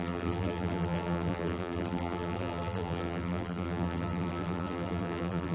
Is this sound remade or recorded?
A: remade